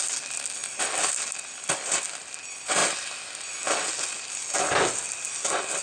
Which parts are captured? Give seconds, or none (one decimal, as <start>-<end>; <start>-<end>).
0.0-5.8